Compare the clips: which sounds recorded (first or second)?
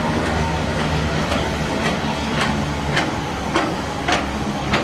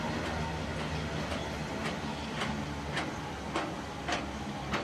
second